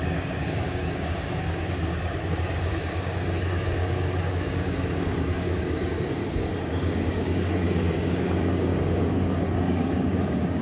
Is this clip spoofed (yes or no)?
yes